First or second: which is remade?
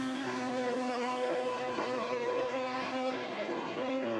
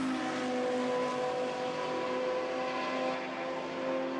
first